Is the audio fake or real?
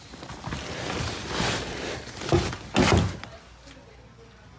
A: real